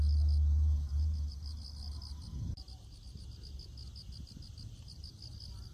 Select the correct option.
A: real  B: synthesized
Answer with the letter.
A